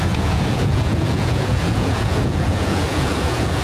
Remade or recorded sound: remade